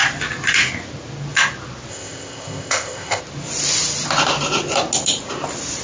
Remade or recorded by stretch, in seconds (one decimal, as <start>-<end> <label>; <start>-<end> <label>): 0.0-1.9 recorded; 1.9-3.2 remade; 3.2-5.8 recorded